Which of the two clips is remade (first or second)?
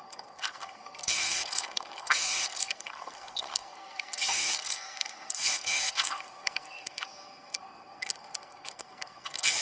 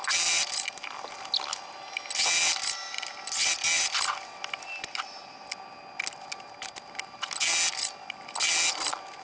first